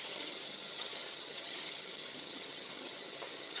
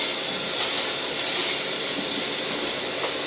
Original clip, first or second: second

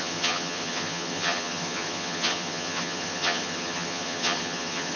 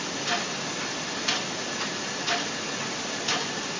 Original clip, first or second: second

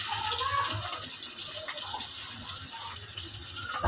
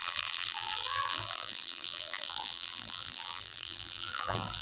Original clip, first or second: first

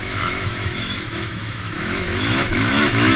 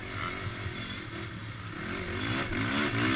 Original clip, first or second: second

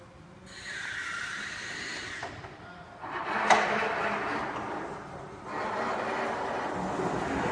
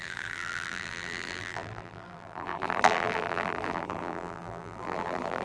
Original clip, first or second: first